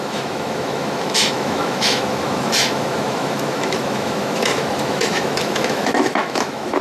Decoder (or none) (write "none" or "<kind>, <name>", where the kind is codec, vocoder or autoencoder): autoencoder, DAC-VAE